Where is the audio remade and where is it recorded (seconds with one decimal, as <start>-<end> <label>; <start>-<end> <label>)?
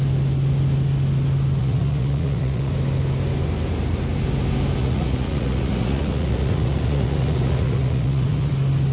0.0-1.6 recorded; 1.6-2.7 remade; 2.7-4.8 recorded; 4.8-8.5 remade; 8.5-8.9 recorded